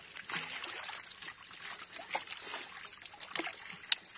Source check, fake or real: real